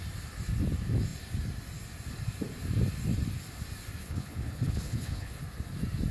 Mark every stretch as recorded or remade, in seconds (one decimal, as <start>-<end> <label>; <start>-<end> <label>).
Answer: 0.0-4.0 recorded; 4.0-5.4 remade; 5.4-6.1 recorded